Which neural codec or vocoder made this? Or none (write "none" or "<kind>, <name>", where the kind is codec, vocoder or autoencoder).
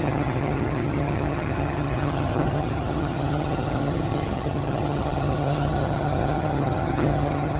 vocoder, HiFi-GAN